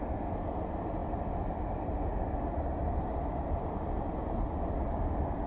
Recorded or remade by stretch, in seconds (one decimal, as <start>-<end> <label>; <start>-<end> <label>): 0.0-5.5 recorded